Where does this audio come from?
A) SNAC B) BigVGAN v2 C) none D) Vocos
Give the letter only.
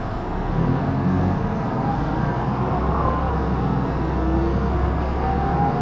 A